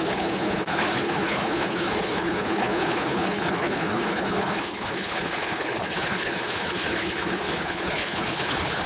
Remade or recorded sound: remade